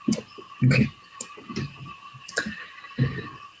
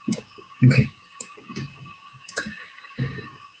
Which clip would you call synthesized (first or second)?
second